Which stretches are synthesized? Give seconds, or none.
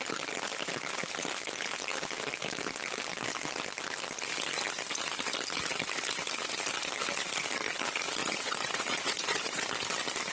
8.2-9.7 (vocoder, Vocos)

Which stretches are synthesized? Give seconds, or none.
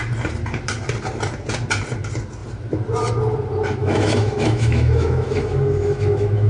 3.8-6.5 (autoencoder, DAC-VAE)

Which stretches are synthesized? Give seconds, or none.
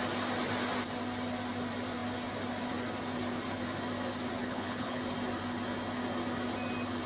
4.4-5.0 (codec, HILCodec)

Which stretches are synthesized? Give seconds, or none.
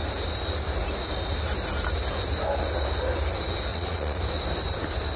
3.7-4.2 (vocoder, Vocos)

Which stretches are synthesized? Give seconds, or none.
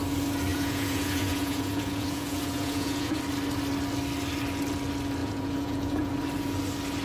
0.5-3.2 (vocoder, Vocos); 5.2-6.1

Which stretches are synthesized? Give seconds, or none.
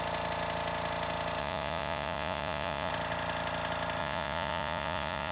1.4-2.9 (vocoder, Vocos); 4.0-5.3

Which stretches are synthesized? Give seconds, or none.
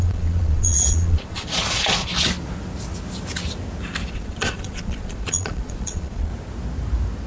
0.0-2.1 (vocoder, Vocos); 4.1-6.3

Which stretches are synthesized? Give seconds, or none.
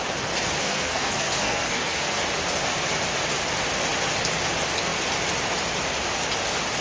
0.6-2.2 (codec, SNAC)